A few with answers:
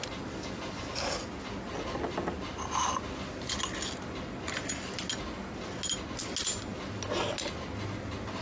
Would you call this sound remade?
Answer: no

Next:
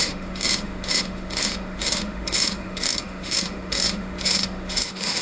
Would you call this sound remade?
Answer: yes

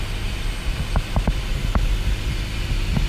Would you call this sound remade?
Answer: no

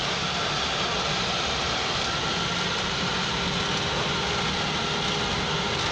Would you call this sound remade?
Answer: no